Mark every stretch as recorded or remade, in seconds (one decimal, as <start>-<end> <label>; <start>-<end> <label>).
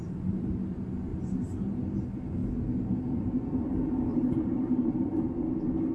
0.0-1.1 recorded; 1.1-1.8 remade; 1.8-4.1 recorded; 4.1-5.1 remade; 5.1-5.9 recorded